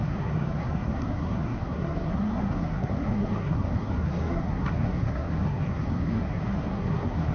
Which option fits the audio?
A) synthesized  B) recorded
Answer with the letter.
A